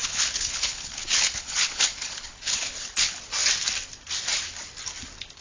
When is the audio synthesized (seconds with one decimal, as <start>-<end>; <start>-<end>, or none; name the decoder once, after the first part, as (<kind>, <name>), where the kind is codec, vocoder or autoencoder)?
0.0-3.2 (codec, HILCodec)